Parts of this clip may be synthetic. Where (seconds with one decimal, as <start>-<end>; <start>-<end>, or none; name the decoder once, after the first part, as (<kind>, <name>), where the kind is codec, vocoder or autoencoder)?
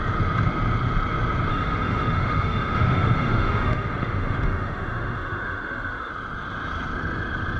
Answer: 1.5-6.1 (autoencoder, DAC-VAE)